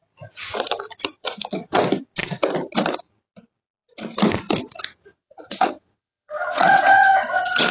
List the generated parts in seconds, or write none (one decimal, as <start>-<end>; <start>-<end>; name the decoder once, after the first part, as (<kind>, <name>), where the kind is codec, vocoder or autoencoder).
1.2-1.8 (vocoder, WaveNeXt); 5.1-7.7